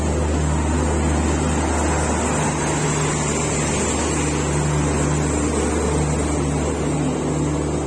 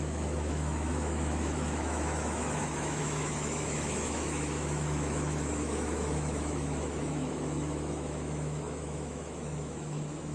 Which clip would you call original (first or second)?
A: first